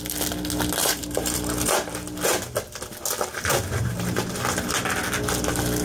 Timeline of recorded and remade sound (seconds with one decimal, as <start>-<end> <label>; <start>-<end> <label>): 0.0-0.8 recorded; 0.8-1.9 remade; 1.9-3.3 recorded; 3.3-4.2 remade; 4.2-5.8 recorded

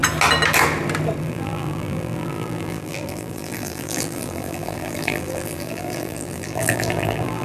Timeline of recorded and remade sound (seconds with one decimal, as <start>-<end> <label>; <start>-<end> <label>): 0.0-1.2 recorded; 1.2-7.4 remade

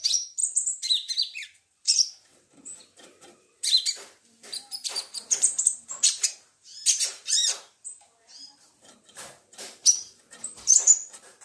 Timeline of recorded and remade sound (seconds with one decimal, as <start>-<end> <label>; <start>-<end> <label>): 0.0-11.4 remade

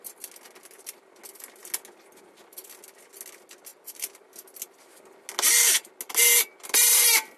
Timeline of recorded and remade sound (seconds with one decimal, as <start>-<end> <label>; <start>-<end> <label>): 0.0-3.7 recorded; 3.7-4.3 remade; 4.3-7.4 recorded

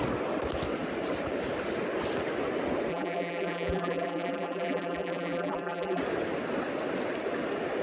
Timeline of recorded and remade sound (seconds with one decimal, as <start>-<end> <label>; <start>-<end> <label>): 0.0-2.9 recorded; 2.9-6.0 remade; 6.0-7.8 recorded

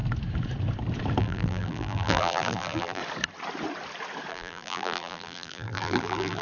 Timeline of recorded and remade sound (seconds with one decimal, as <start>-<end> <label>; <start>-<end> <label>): 0.0-1.2 recorded; 1.2-3.0 remade; 3.0-4.3 recorded; 4.3-6.4 remade

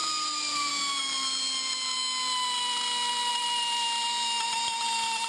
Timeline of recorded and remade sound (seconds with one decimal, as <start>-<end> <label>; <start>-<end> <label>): 0.0-0.7 remade; 0.7-3.3 recorded; 3.3-5.3 remade

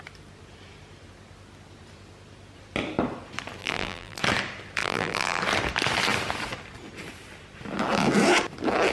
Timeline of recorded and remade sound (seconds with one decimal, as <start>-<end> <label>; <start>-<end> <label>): 0.0-3.6 recorded; 3.6-4.2 remade; 4.2-4.8 recorded; 4.8-5.4 remade; 5.4-8.9 recorded